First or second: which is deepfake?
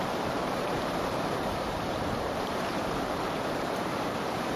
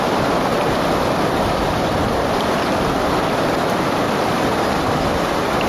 first